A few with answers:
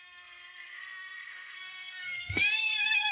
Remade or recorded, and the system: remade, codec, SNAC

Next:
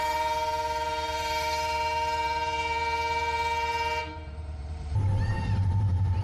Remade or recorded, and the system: remade, vocoder, BigVGAN v2